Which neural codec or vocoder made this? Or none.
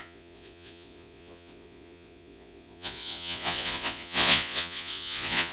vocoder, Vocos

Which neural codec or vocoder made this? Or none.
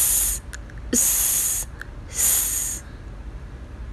none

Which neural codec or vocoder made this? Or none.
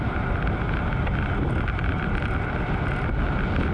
none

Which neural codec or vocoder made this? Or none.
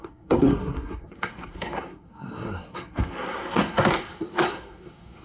codec, SNAC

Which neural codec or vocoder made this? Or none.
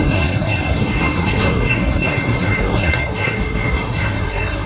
codec, SNAC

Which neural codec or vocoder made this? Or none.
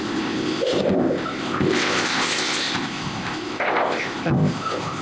codec, ZipCodec